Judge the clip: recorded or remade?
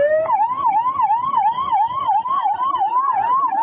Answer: recorded